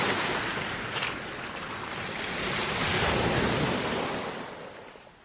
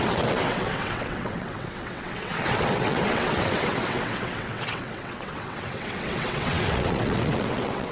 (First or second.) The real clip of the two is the first